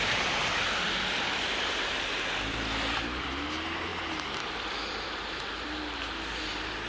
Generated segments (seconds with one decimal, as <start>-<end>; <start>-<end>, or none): none